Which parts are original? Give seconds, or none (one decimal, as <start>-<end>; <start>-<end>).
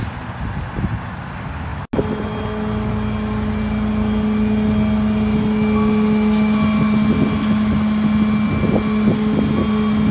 0.0-10.1